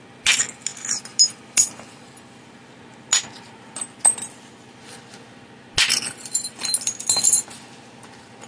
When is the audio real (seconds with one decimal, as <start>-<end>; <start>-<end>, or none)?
0.0-8.5